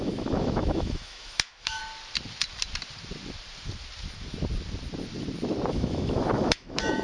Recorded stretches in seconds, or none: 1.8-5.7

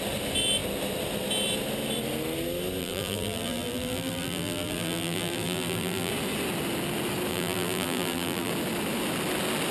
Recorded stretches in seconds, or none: 0.0-2.8; 6.1-7.3; 8.5-9.7